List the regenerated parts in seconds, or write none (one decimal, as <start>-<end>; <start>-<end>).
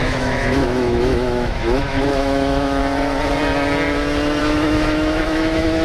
0.0-2.8; 4.4-5.8